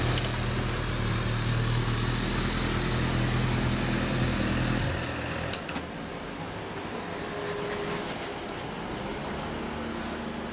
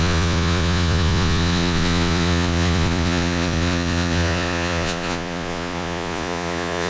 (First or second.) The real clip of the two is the first